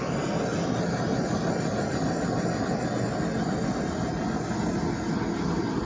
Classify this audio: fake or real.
real